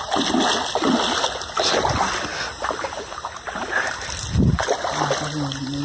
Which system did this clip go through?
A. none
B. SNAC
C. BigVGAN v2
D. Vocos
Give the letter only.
A